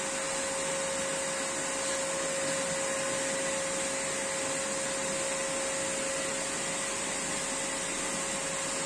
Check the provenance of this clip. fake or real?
real